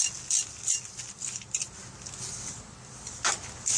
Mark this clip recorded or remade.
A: recorded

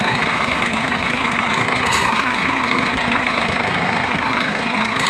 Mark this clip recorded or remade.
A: remade